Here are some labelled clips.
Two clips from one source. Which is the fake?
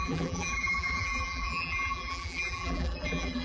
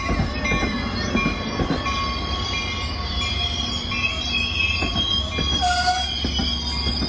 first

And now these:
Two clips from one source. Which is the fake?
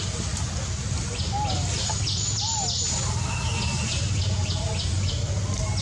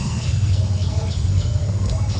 second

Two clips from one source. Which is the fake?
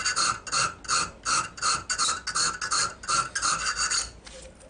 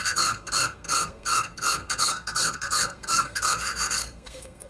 second